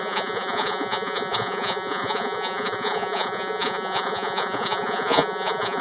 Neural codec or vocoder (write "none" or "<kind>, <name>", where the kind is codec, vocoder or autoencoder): vocoder, Vocos